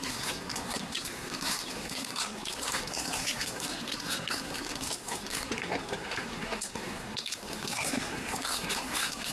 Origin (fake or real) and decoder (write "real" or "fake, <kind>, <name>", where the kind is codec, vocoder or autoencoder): fake, codec, SNAC